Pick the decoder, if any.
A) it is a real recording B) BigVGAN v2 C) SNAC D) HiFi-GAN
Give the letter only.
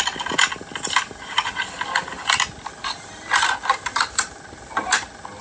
A